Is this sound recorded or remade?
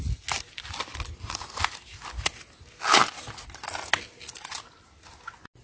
recorded